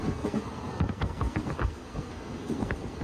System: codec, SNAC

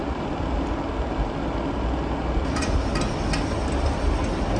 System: none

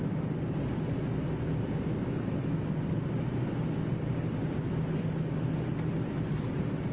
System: none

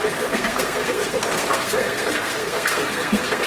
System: codec, SNAC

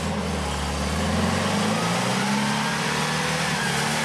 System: none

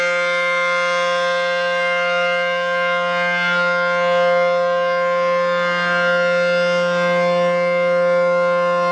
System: none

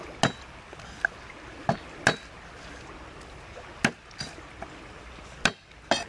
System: none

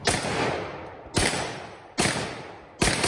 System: none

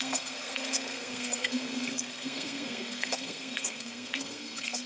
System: codec, SNAC